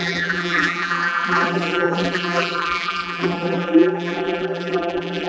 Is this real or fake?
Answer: fake